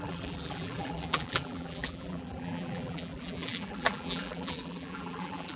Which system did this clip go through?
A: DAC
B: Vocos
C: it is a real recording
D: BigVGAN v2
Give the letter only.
D